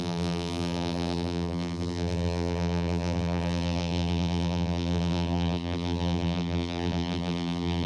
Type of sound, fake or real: fake